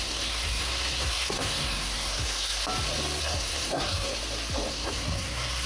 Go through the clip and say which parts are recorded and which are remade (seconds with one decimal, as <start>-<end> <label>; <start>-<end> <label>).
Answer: 0.0-2.6 remade; 2.6-3.2 recorded; 3.2-4.2 remade; 4.2-4.7 recorded; 4.7-5.7 remade

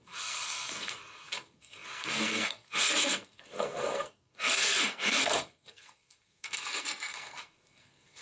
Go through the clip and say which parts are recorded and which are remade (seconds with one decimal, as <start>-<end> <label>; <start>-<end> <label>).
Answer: 0.0-8.2 remade

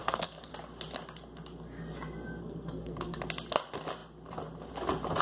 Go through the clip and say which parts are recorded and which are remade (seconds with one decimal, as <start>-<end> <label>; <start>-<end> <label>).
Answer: 0.0-0.5 remade; 0.5-2.4 recorded; 2.4-3.2 remade; 3.2-5.2 recorded

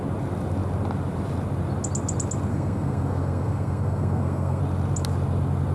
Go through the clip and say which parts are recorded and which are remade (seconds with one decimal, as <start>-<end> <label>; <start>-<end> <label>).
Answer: 0.0-2.5 recorded; 2.5-4.6 remade; 4.6-5.7 recorded

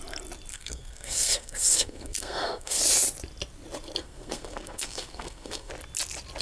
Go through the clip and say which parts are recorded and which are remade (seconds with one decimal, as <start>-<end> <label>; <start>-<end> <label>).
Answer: 0.0-0.5 recorded; 0.5-2.8 remade; 2.8-4.0 recorded; 4.0-5.7 remade; 5.7-6.4 recorded

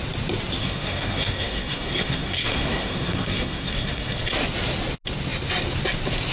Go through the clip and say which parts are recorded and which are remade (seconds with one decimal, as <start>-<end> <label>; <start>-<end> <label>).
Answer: 0.0-0.6 recorded; 0.6-4.2 remade; 4.2-6.3 recorded